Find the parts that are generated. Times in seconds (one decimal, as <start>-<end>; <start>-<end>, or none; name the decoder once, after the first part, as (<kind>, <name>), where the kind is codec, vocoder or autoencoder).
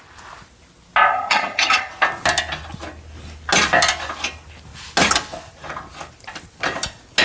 1.1-1.9 (vocoder, HiFi-GAN)